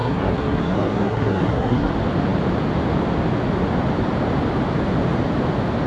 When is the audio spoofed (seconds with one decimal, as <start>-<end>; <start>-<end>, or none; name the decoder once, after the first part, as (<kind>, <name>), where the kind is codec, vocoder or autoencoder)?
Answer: 0.0-1.9 (codec, SNAC)